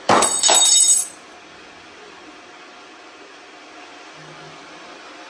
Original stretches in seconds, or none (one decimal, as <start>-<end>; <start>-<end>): 0.0-5.3